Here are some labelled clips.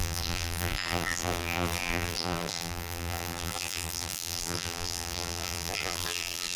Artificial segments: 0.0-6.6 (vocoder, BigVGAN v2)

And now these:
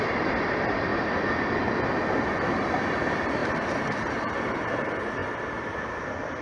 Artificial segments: 0.0-0.9 (vocoder, BigVGAN v2); 2.6-5.2

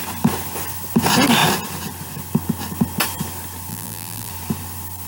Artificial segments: 3.7-4.3 (vocoder, BigVGAN v2)

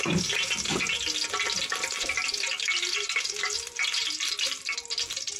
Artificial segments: 0.0-0.7 (vocoder, BigVGAN v2); 1.9-5.4